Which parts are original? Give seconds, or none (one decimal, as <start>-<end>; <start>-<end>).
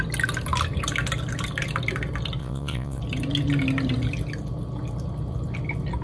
0.0-2.4; 3.0-6.0